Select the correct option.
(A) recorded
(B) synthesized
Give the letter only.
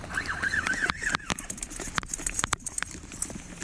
B